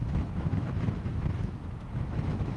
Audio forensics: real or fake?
fake